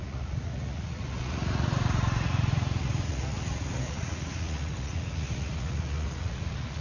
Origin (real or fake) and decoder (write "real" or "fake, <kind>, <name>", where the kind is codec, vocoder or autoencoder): fake, vocoder, Vocos